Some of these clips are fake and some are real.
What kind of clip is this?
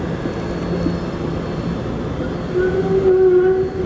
real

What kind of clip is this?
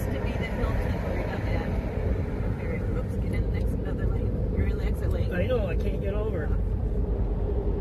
real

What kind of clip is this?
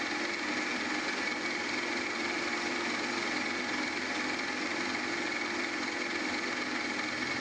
real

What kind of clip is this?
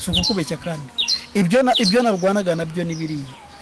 fake